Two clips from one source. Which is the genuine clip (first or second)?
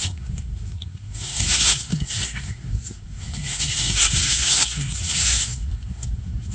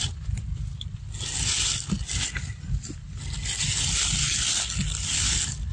second